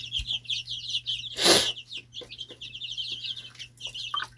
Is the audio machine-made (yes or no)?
no